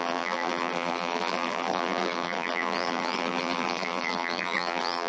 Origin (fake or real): fake